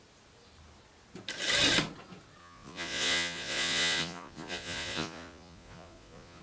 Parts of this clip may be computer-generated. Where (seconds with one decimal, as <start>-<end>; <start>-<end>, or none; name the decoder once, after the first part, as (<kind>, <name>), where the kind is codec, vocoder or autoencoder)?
2.4-6.4 (vocoder, Vocos)